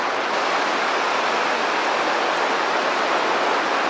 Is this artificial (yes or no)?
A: no